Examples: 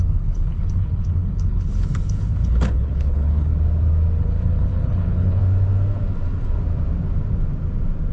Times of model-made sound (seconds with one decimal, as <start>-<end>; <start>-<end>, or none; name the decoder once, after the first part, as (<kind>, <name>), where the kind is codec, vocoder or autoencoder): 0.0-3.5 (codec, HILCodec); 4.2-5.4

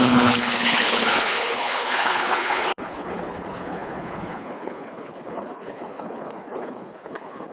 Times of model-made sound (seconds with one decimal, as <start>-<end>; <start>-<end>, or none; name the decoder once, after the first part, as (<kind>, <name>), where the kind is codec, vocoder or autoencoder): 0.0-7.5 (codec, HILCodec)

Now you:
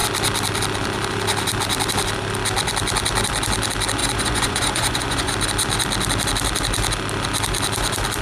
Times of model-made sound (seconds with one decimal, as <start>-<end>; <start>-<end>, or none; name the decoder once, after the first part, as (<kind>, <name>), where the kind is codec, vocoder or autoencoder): 4.0-5.3 (vocoder, Vocos)

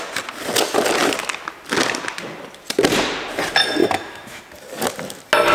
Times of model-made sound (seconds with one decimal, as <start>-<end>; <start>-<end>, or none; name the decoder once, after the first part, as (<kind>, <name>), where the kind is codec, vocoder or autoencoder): 3.8-4.4 (autoencoder, DAC-VAE)

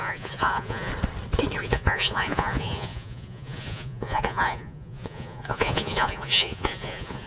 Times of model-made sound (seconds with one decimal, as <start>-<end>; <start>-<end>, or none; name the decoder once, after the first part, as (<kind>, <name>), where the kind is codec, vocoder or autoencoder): 0.0-0.9 (vocoder, Vocos); 1.6-7.3

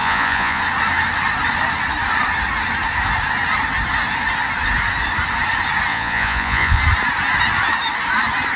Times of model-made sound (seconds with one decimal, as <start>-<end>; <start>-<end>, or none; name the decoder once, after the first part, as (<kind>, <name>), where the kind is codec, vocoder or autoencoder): 0.0-0.6 (vocoder, Vocos); 5.9-6.8

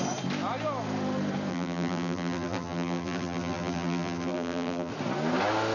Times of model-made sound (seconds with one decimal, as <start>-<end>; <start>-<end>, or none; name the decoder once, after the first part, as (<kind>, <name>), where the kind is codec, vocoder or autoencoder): 1.5-4.9 (vocoder, BigVGAN v2)